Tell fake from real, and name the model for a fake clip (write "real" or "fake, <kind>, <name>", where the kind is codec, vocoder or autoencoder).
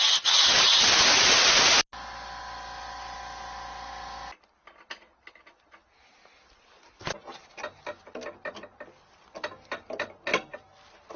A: real